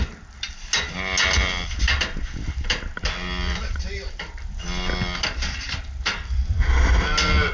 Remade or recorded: recorded